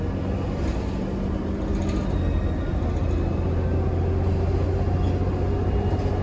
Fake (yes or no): no